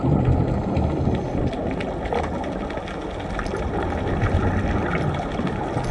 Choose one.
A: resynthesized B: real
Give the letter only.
B